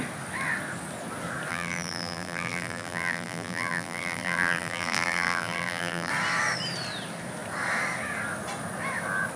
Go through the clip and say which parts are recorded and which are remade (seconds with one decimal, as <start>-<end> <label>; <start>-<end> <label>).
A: 0.0-1.5 recorded; 1.5-6.1 remade; 6.1-9.4 recorded